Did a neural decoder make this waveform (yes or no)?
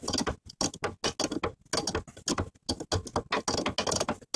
no